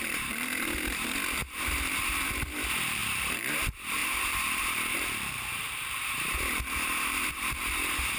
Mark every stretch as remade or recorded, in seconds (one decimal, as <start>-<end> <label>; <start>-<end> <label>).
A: 0.0-8.2 remade